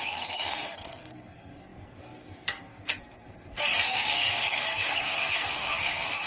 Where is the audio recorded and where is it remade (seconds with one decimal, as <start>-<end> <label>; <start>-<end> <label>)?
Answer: 0.0-6.3 remade